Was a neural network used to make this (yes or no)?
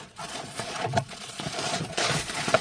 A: yes